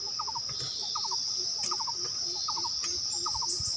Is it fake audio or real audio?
real